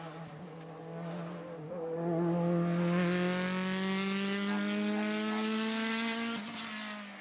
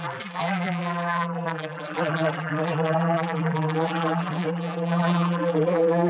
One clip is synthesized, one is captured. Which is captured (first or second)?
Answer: first